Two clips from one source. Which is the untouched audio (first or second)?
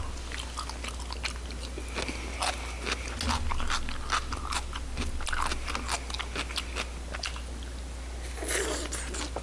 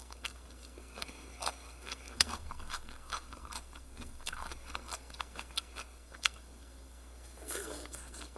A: first